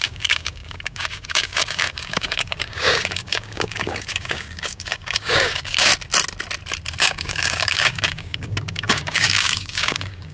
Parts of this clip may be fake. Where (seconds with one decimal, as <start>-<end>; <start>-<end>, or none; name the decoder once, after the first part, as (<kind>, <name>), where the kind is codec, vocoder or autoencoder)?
0.0-5.9 (codec, DAC); 7.0-10.3